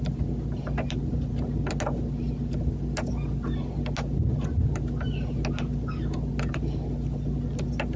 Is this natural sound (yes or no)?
yes